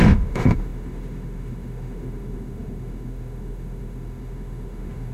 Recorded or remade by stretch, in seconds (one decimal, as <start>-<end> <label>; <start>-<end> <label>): 0.0-5.1 remade